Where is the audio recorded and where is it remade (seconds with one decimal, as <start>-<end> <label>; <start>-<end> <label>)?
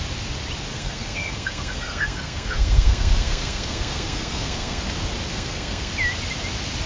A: 0.0-0.7 recorded; 0.7-4.8 remade; 4.8-5.3 recorded; 5.3-5.9 remade; 5.9-6.9 recorded